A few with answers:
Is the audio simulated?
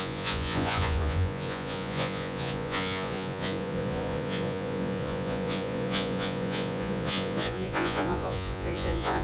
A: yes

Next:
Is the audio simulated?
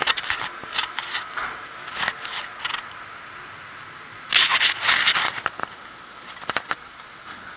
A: no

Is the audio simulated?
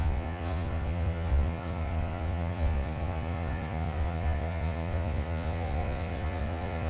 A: yes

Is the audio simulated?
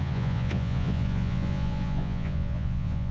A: yes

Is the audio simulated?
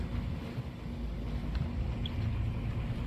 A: no